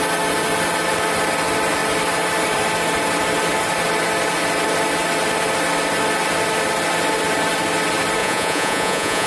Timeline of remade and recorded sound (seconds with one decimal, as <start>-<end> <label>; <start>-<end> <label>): 0.0-8.2 recorded; 8.2-9.3 remade